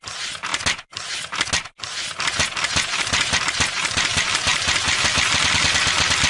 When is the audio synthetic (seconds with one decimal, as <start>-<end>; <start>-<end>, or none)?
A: none